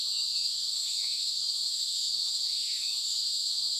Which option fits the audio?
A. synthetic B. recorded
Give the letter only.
A